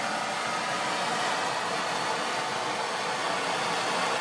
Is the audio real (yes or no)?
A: yes